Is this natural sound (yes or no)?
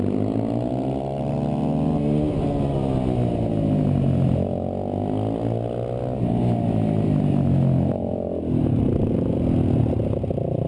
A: yes